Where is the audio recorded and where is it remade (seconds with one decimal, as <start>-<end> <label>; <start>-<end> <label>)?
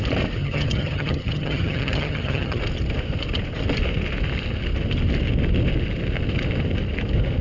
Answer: 0.0-0.4 recorded; 0.4-2.6 remade; 2.6-7.4 recorded